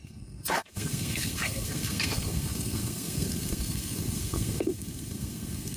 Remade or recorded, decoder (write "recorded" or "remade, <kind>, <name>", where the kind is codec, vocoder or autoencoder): remade, codec, SNAC